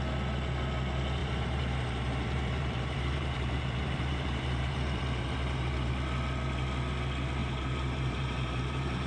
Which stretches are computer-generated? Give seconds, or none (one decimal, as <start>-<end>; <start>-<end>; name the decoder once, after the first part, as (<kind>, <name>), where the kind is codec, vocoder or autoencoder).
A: 1.2-5.9 (vocoder, BigVGAN v2); 7.4-9.1